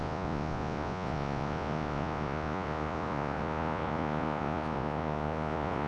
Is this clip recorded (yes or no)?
no